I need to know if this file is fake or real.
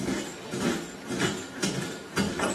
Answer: real